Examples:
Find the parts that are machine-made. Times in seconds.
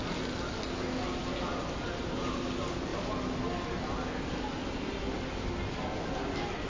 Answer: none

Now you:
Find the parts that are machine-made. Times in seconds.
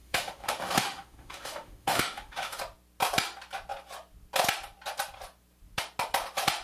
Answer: 0.0-2.6 (autoencoder, DAC-VAE)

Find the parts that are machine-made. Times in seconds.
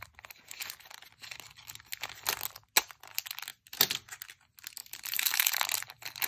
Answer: 4.8-5.6 (vocoder, BigVGAN v2)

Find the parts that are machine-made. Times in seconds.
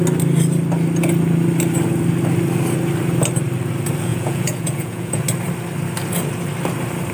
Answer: 4.1-5.2 (vocoder, Vocos)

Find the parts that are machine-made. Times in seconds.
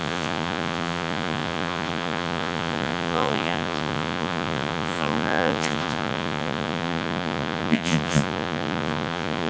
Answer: 0.0-9.5 (vocoder, Vocos)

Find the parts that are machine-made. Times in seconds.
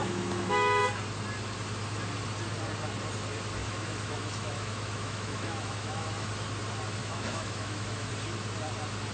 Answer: 0.0-0.8 (autoencoder, DAC-VAE); 3.6-6.3; 7.0-8.1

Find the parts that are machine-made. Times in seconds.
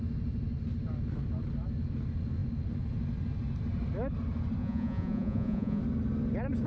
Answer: 4.6-5.8 (vocoder, Vocos)